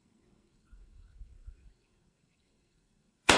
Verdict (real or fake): fake